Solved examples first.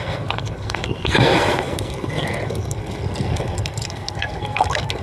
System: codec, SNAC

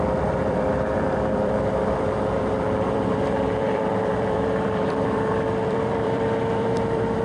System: vocoder, BigVGAN v2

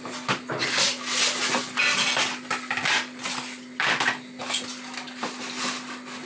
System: none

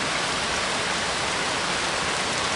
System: vocoder, BigVGAN v2